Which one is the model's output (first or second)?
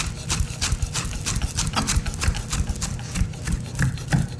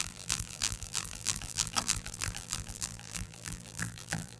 second